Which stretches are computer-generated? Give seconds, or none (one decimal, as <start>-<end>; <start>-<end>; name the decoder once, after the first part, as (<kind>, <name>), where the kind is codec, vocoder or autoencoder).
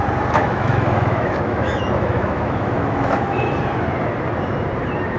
0.4-3.5 (autoencoder, DAC-VAE)